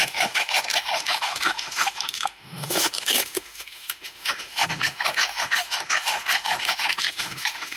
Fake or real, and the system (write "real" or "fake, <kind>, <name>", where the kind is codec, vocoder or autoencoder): fake, autoencoder, DAC-VAE